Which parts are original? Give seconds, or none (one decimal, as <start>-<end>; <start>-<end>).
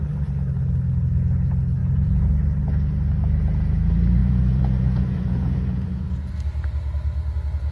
0.0-1.8; 2.3-4.2; 6.3-7.7